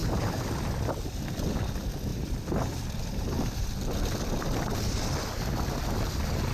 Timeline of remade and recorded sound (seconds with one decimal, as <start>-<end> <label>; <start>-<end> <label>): 0.0-6.5 recorded

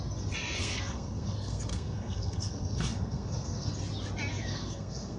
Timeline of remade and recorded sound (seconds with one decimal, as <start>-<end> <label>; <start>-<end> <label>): 0.0-0.6 recorded; 0.6-3.7 remade; 3.7-4.3 recorded; 4.3-5.2 remade

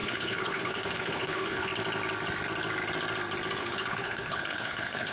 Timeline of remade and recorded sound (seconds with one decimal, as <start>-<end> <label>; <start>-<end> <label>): 0.0-1.7 remade; 1.7-3.6 recorded; 3.6-5.1 remade

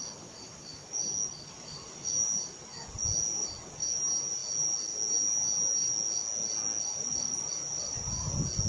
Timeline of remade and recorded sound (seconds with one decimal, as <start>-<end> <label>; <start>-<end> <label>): 0.0-8.7 recorded

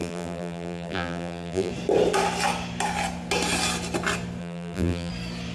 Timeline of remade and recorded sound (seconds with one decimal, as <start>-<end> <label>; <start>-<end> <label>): 0.0-1.7 remade; 1.7-4.4 recorded; 4.4-5.1 remade; 5.1-5.5 recorded